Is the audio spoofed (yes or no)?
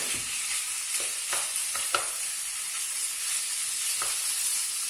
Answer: no